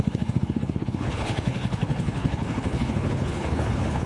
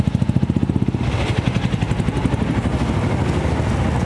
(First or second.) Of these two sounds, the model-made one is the first